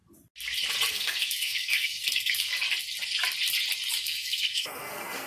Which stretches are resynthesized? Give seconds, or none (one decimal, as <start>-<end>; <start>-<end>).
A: 0.9-2.5; 4.0-5.3